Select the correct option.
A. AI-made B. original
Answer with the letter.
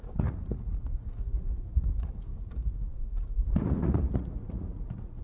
A